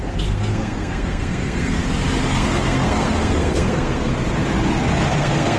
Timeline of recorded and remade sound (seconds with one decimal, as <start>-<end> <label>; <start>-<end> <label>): 0.0-1.8 remade; 1.8-2.3 recorded; 2.3-4.1 remade; 4.1-5.1 recorded; 5.1-5.6 remade